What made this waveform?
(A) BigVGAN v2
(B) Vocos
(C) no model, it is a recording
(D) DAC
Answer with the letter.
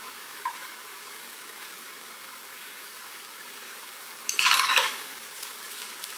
D